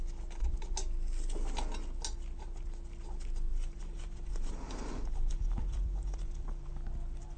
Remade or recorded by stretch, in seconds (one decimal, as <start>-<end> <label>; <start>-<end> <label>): 0.0-3.5 recorded; 3.5-6.7 remade; 6.7-7.4 recorded